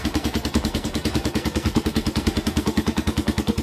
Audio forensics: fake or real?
fake